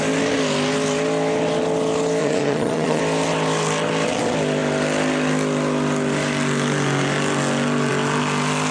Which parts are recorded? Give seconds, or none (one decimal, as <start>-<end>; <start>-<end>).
0.0-2.2; 3.0-8.7